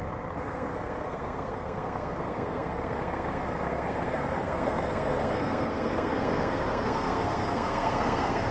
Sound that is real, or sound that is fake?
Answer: fake